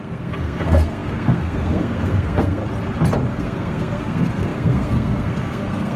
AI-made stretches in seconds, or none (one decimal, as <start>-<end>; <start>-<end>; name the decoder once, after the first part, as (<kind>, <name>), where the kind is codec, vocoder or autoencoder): 0.0-2.6 (codec, SNAC); 3.3-6.0